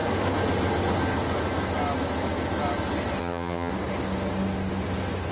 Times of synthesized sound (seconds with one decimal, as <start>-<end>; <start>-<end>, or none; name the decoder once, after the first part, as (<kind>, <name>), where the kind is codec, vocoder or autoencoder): 3.2-3.7 (vocoder, HiFi-GAN)